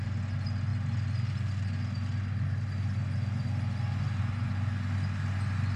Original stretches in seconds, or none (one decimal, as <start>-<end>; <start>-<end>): 0.0-5.8